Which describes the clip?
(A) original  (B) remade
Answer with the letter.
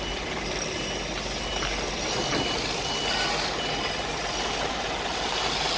A